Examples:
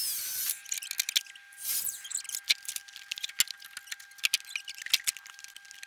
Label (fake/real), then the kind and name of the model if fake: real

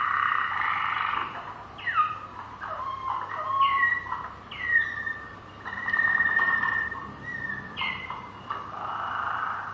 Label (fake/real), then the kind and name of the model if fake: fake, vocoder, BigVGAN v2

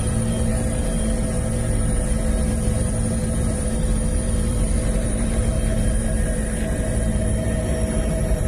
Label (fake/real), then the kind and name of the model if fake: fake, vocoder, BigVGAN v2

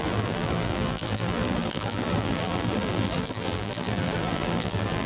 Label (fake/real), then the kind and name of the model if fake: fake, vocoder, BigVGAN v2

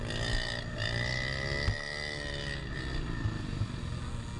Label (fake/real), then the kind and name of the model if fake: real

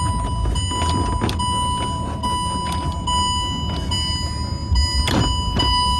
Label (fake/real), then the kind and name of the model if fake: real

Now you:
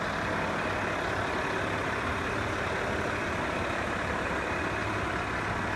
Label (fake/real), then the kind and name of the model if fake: real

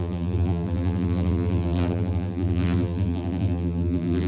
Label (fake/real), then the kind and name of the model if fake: fake, vocoder, BigVGAN v2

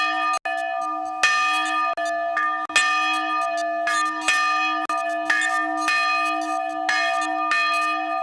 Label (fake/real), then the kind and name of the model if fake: real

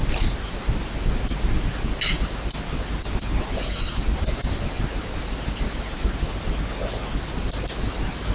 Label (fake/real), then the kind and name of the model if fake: real